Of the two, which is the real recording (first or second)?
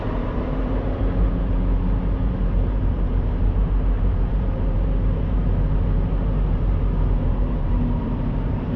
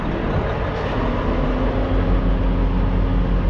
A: second